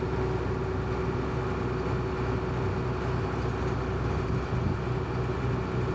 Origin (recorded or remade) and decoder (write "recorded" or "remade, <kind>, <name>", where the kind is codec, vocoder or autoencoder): recorded